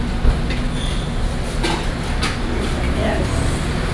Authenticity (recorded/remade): recorded